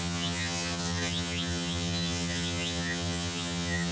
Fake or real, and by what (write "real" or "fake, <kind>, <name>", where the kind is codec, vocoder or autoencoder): fake, vocoder, HiFi-GAN